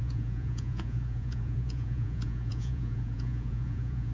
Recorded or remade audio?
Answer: remade